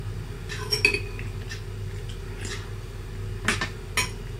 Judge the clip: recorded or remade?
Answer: recorded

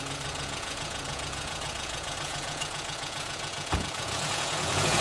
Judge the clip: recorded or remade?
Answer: remade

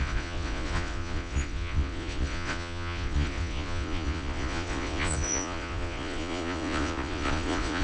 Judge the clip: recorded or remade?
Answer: remade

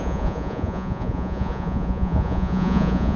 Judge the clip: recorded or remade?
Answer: remade